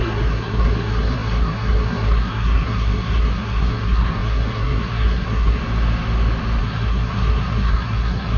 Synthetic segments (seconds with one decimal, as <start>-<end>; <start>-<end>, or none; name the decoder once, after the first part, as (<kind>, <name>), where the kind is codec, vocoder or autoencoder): 0.0-5.6 (codec, SNAC); 6.6-8.4